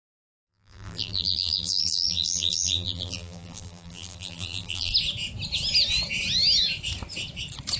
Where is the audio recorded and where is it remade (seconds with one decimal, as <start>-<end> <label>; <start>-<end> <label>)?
0.0-4.9 remade; 4.9-7.8 recorded